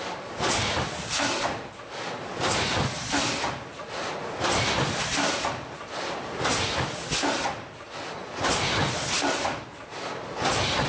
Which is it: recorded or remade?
recorded